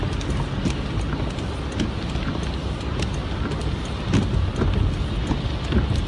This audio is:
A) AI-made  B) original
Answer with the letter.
B